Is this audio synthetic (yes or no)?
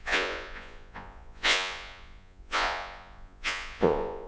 yes